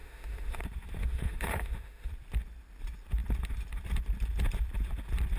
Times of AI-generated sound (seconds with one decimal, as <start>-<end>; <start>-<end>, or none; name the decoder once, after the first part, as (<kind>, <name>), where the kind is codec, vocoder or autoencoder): 0.0-0.6 (autoencoder, DAC-VAE); 1.0-2.1